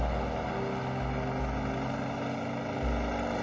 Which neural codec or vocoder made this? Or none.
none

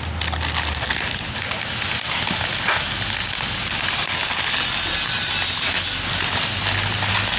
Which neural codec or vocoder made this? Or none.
none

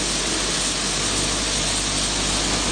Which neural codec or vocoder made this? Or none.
none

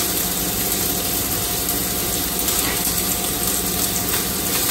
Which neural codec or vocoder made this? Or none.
none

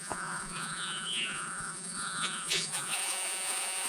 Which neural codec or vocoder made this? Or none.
vocoder, Vocos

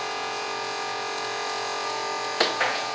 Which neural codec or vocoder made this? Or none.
vocoder, Vocos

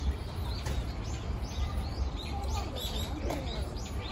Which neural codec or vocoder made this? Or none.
vocoder, BigVGAN v2